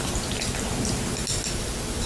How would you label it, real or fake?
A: real